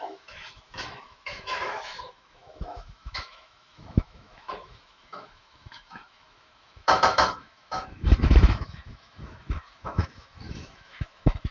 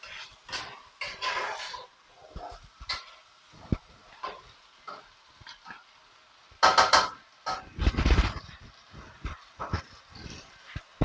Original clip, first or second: second